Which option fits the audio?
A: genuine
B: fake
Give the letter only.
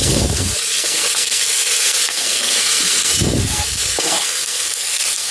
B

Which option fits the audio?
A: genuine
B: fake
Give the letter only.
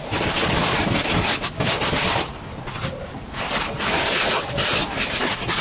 A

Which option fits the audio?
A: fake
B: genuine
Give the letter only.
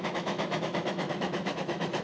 A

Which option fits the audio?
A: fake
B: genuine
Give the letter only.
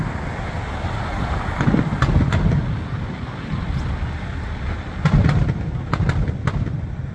B